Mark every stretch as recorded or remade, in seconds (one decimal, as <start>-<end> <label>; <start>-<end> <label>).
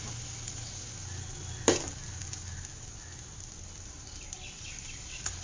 0.0-5.4 recorded